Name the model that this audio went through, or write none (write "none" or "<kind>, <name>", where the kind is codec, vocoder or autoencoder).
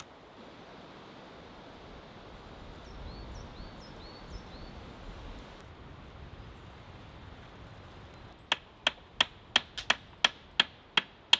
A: none